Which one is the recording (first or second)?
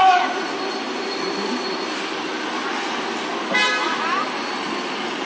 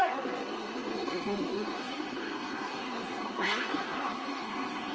first